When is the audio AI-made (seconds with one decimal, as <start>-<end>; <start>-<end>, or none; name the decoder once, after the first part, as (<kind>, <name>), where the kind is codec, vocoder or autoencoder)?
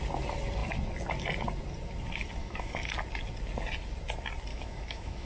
2.4-2.9 (autoencoder, DAC-VAE); 4.5-5.3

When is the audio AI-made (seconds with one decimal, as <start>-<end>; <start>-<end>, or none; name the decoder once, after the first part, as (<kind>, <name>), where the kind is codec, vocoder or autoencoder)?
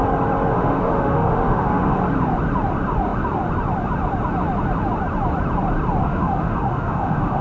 0.5-2.0 (autoencoder, DAC-VAE); 6.0-7.4